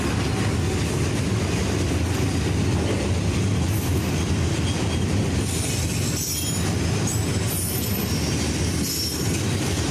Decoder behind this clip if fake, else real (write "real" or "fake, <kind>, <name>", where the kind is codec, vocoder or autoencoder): real